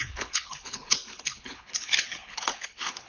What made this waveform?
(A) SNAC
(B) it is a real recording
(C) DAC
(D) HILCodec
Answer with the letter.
D